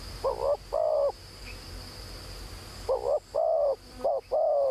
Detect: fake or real real